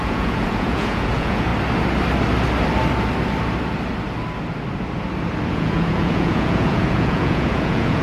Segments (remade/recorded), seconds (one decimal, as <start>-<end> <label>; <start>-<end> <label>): 0.0-1.5 remade; 1.5-5.5 recorded; 5.5-8.0 remade